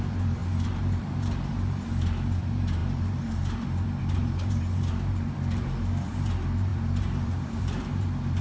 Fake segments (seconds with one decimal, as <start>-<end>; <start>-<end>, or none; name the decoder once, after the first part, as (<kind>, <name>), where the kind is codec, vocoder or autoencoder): 0.0-8.4 (vocoder, BigVGAN v2)